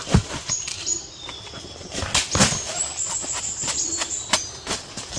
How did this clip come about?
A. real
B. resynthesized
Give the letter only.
A